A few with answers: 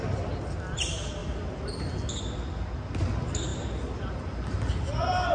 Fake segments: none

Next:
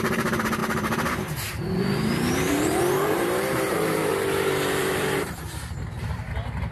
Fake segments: 0.0-4.1 (vocoder, BigVGAN v2); 4.8-6.7

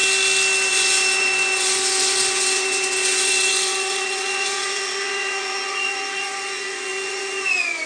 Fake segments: 0.7-7.9 (vocoder, Vocos)

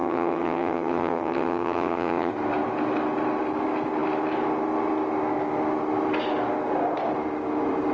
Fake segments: 0.0-2.3 (vocoder, HiFi-GAN)